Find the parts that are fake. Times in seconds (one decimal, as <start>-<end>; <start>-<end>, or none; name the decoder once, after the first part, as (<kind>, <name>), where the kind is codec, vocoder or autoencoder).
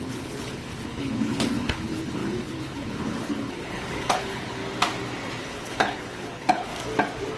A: 0.0-4.6 (codec, HILCodec); 5.4-6.7